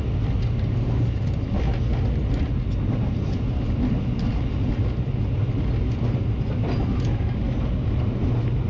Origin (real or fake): real